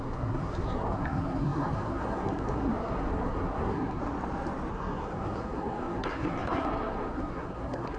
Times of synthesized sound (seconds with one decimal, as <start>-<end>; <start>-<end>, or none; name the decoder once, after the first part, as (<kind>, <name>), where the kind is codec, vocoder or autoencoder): 0.0-4.0 (codec, SNAC); 4.7-8.0